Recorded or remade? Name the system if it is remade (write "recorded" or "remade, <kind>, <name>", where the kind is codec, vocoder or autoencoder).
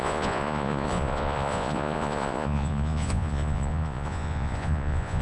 remade, vocoder, Vocos